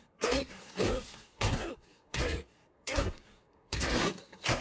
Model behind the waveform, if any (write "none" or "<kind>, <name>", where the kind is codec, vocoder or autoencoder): codec, SNAC